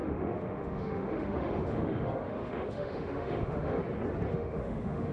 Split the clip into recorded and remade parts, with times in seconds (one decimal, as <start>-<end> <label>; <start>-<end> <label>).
0.0-3.8 remade; 3.8-4.3 recorded; 4.3-5.1 remade